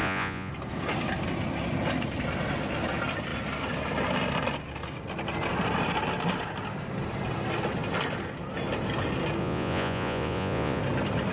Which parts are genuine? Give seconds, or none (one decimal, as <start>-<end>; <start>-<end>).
0.5-9.4; 10.8-11.3